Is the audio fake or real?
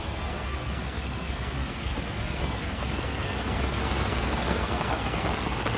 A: fake